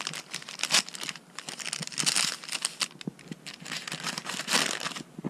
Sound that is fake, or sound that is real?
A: real